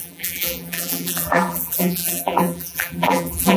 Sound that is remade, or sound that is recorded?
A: remade